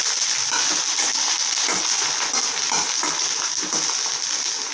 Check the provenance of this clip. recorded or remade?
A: recorded